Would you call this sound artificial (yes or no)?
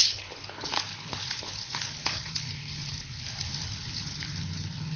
yes